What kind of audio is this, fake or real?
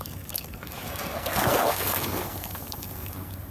fake